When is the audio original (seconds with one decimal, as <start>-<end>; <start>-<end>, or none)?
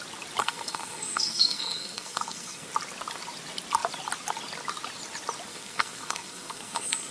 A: 0.0-0.4; 2.7-5.5